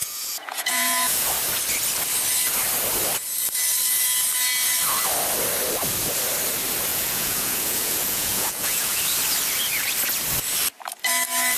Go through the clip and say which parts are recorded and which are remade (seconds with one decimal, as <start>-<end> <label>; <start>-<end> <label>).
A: 0.0-1.3 remade; 1.3-6.9 recorded; 6.9-9.0 remade; 9.0-11.6 recorded

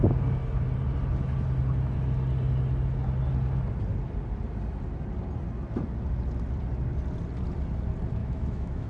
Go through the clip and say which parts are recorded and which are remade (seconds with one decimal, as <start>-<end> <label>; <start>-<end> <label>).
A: 0.0-8.2 recorded; 8.2-8.9 remade

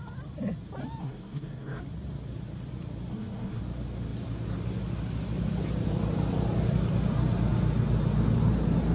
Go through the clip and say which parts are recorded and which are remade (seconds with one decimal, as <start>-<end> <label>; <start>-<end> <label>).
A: 0.0-1.0 recorded; 1.0-1.8 remade; 1.8-3.1 recorded; 3.1-3.6 remade; 3.6-8.9 recorded

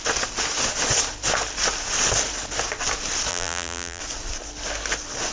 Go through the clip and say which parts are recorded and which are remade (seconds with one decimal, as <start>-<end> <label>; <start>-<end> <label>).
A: 0.0-3.3 recorded; 3.3-4.0 remade; 4.0-5.3 recorded

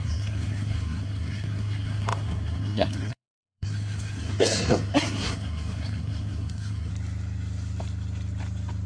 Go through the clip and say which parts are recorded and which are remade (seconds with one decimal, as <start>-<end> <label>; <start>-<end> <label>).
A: 0.0-6.9 remade; 6.9-8.9 recorded